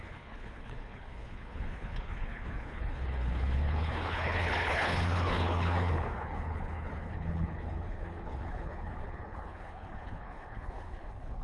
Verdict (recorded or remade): remade